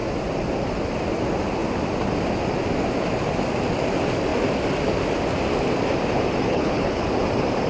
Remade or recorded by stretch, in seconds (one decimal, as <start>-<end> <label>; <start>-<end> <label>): 0.0-6.5 recorded; 6.5-7.1 remade; 7.1-7.7 recorded